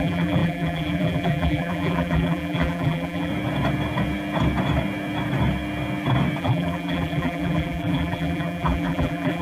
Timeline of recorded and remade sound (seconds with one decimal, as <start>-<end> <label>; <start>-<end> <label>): 0.0-3.3 remade; 3.3-6.4 recorded; 6.4-9.4 remade